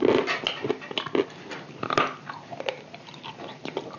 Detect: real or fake real